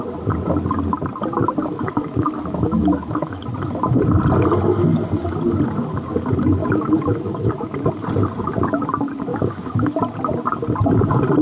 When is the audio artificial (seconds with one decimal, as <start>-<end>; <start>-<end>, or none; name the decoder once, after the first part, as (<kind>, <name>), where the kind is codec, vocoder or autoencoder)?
1.7-3.4 (autoencoder, DAC-VAE); 6.6-7.5; 9.3-10.0